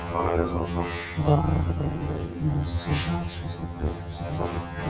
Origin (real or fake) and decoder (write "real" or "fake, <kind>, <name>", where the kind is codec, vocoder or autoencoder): fake, vocoder, HiFi-GAN